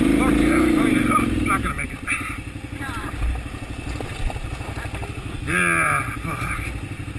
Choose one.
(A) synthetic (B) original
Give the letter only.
B